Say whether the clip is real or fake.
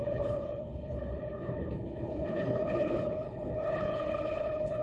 fake